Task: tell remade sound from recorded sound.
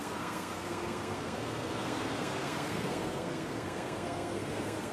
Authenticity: remade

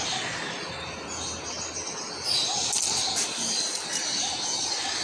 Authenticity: recorded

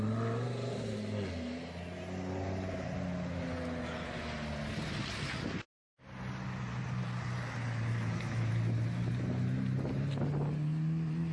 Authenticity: recorded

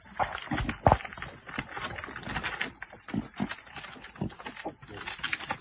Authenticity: recorded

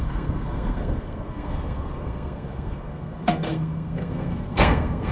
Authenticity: remade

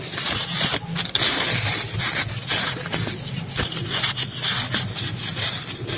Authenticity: recorded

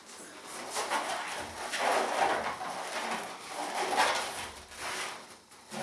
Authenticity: recorded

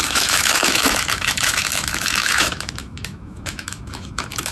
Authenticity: remade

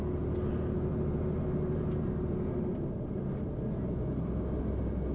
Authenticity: recorded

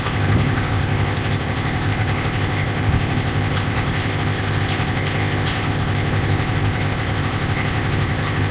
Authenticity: remade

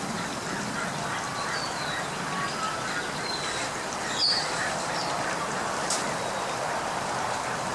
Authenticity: recorded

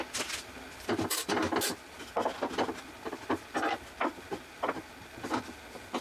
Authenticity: recorded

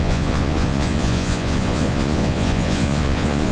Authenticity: remade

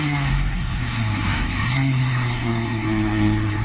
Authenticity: remade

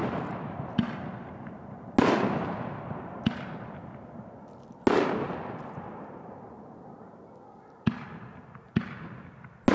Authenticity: recorded